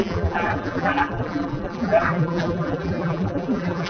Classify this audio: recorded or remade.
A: remade